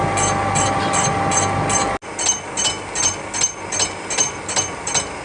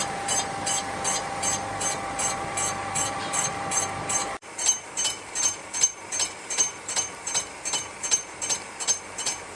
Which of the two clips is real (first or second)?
first